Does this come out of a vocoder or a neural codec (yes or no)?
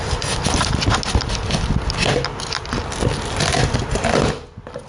no